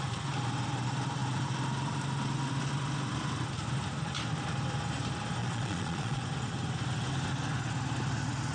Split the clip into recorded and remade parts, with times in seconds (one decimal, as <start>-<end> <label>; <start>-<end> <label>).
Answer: 0.0-5.4 recorded; 5.4-6.2 remade; 6.2-8.5 recorded